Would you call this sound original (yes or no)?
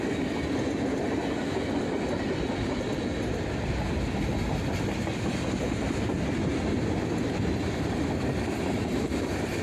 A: yes